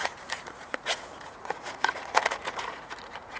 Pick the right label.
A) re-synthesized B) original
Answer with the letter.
A